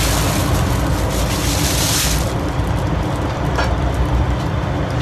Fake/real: real